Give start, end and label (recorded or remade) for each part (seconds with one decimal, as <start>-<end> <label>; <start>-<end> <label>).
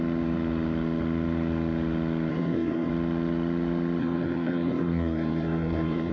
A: 0.0-2.3 recorded; 2.3-2.9 remade; 2.9-4.0 recorded; 4.0-6.1 remade